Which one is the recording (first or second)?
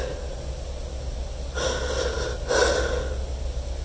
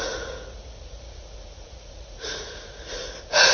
first